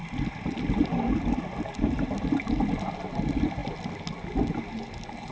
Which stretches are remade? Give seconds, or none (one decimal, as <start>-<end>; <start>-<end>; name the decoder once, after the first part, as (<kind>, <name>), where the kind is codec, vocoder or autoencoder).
none